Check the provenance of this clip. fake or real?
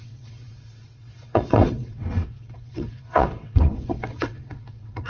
fake